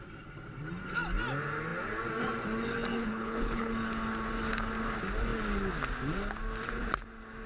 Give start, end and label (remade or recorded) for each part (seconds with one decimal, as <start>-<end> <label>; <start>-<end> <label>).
0.0-3.0 recorded; 3.0-3.7 remade; 3.7-7.5 recorded